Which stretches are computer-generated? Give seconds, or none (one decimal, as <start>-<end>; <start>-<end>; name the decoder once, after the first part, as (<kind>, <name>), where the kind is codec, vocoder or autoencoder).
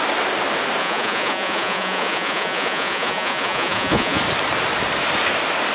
0.8-4.2 (vocoder, Vocos)